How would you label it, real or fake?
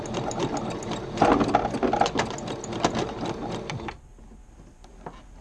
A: real